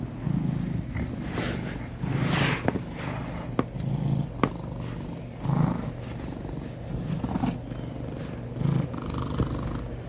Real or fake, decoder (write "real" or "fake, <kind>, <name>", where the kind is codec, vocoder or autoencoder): real